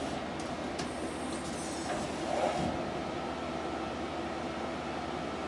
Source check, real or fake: real